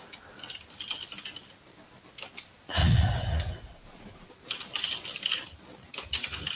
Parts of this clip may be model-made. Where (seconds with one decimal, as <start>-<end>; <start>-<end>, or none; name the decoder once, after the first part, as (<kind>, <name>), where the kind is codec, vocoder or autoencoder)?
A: 2.8-4.3 (vocoder, Vocos)